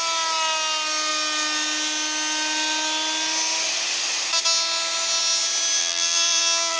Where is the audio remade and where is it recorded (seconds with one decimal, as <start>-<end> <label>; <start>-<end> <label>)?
0.0-5.8 recorded; 5.8-6.8 remade